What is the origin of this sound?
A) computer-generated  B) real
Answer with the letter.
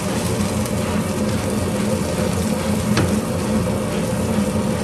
B